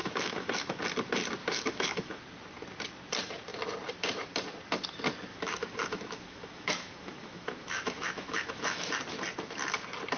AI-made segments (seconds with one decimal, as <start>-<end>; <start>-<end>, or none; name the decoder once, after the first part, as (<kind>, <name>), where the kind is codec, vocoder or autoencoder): 0.0-0.8 (autoencoder, DAC-VAE); 1.4-2.2; 5.3-8.9